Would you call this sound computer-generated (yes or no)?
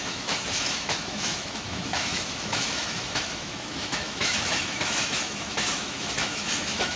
yes